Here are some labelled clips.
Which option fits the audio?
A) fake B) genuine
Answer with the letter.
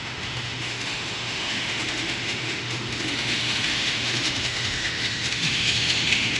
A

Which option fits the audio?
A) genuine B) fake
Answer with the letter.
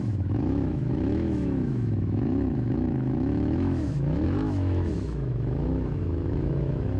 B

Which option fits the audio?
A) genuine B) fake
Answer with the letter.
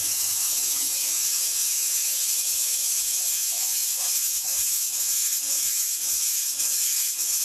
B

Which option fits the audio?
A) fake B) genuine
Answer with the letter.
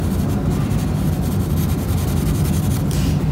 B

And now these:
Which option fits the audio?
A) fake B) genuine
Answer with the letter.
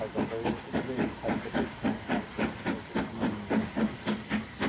B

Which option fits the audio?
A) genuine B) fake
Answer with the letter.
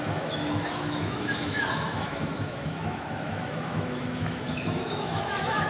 B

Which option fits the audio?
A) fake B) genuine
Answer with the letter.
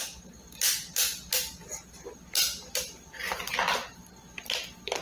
B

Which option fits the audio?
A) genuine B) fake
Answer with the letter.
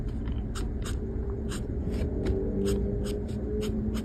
A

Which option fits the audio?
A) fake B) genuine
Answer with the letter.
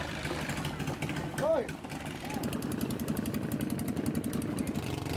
B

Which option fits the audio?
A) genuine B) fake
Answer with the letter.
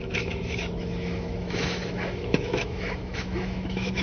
B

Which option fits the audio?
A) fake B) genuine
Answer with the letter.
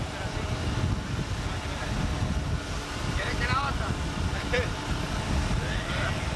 B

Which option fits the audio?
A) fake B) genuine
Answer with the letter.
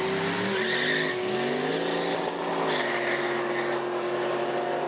B